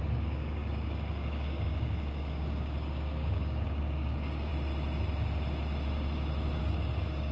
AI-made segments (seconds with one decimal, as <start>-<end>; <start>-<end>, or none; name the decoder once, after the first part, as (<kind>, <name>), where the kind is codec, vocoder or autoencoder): 0.0-4.5 (codec, DAC); 6.6-7.3